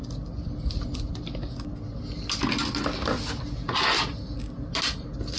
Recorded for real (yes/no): yes